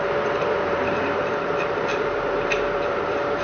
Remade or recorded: remade